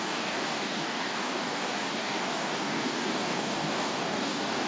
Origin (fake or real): fake